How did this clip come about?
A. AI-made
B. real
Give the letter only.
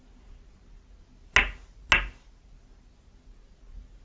B